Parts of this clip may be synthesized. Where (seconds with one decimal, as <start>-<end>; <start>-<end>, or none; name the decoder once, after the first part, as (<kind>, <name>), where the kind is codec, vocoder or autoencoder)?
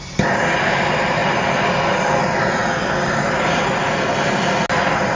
none